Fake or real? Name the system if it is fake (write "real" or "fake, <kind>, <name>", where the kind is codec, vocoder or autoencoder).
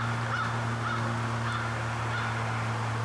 real